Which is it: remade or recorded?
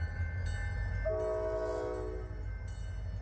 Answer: recorded